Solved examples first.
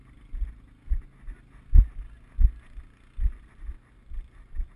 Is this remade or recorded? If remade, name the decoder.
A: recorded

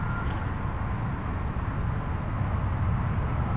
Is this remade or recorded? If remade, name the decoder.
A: recorded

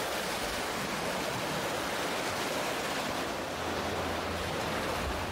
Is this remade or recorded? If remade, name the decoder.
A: recorded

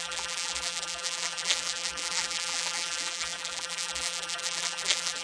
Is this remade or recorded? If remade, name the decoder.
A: remade, vocoder, BigVGAN v2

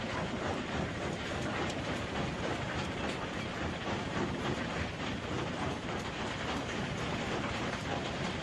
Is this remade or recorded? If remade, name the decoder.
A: remade, vocoder, BigVGAN v2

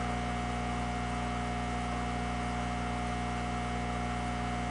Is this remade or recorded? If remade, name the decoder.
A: recorded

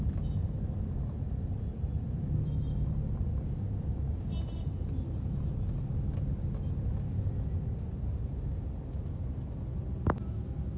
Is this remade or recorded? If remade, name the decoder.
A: recorded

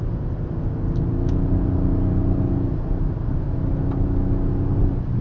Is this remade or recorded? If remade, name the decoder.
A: recorded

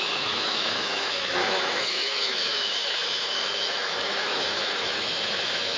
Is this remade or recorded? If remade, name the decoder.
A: remade, autoencoder, DAC-VAE